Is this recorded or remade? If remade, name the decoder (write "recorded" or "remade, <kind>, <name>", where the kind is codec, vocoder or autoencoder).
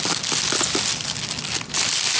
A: recorded